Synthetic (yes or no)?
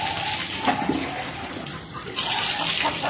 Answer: no